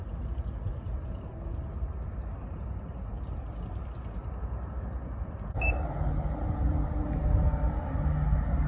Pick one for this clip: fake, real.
real